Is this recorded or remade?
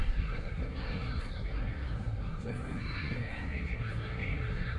remade